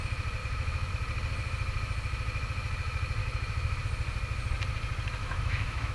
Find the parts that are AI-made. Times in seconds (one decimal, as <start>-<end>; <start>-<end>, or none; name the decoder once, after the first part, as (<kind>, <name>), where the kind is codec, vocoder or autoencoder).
0.4-0.9 (autoencoder, DAC-VAE); 3.2-3.8; 5.2-5.9